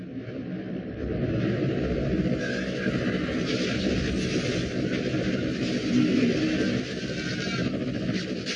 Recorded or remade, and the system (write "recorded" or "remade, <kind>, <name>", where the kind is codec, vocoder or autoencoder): recorded